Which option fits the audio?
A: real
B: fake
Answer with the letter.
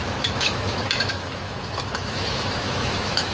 B